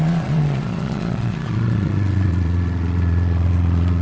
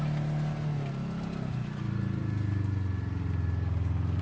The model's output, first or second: first